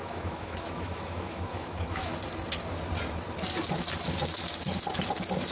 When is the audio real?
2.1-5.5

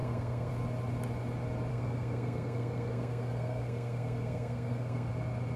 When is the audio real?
0.5-1.7; 5.1-5.6

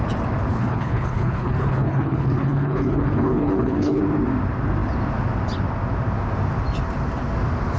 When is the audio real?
0.0-0.5; 4.0-7.8